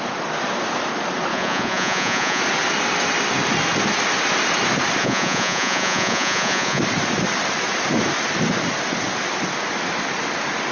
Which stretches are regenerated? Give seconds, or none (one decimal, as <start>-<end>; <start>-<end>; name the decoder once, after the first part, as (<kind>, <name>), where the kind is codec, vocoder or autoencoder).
1.3-2.4 (vocoder, Vocos); 5.0-6.8